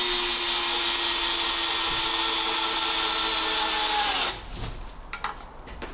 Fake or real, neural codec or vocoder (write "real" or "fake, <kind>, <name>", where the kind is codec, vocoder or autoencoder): real